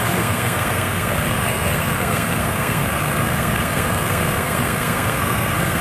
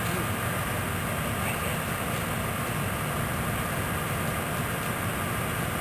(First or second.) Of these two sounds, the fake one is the first